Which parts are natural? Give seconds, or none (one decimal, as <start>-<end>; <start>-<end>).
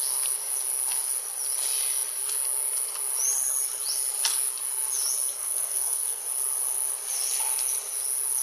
0.0-5.4; 6.2-8.4